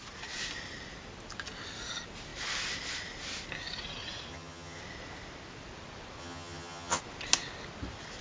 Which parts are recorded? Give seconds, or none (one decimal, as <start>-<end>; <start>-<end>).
0.0-4.3; 4.8-6.2; 7.0-8.2